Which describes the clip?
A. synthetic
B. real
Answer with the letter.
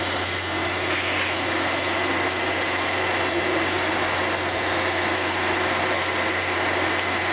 B